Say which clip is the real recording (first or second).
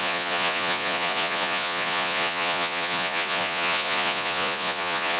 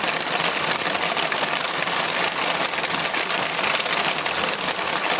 second